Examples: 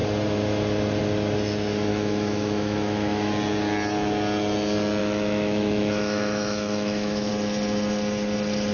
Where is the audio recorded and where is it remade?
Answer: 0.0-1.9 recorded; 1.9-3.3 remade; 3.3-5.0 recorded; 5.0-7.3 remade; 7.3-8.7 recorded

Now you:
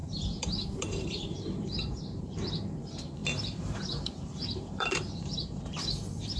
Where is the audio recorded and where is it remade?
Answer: 0.0-6.4 remade

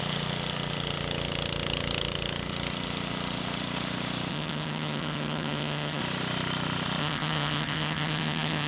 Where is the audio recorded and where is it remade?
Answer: 0.0-4.3 recorded; 4.3-6.0 remade; 6.0-7.0 recorded; 7.0-8.7 remade

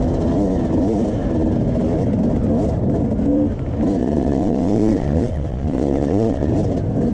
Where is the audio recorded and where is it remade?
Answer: 0.0-4.0 recorded; 4.0-6.5 remade; 6.5-7.1 recorded

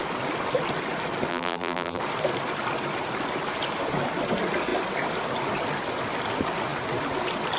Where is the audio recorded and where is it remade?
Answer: 0.0-1.3 recorded; 1.3-2.0 remade; 2.0-7.6 recorded